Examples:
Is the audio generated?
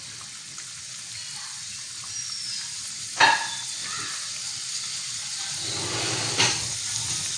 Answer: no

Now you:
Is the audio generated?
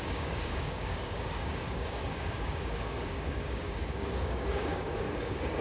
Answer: yes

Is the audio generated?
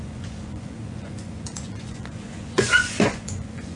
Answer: yes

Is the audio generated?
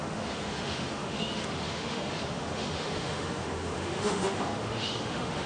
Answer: yes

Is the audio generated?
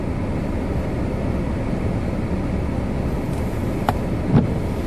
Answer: no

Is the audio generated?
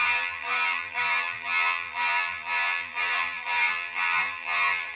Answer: yes